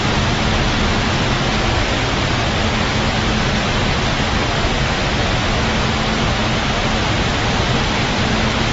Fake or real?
real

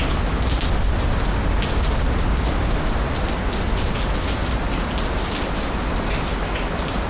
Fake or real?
real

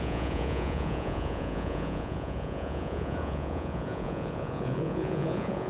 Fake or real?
fake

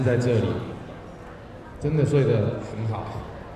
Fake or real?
real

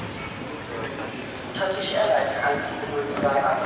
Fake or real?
real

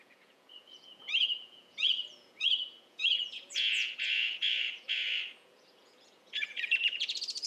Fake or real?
fake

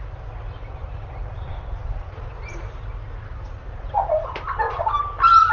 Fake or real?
real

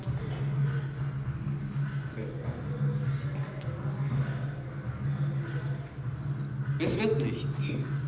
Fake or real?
real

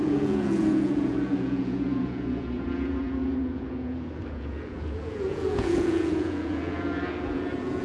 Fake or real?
fake